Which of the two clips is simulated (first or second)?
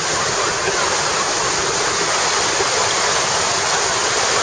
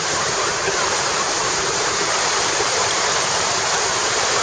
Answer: second